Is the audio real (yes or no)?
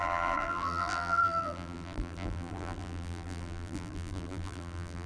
no